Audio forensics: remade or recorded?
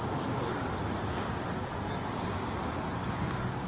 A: recorded